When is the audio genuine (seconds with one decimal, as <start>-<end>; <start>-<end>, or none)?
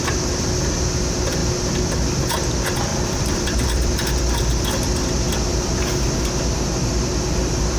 0.0-2.9; 4.2-5.5; 6.2-7.8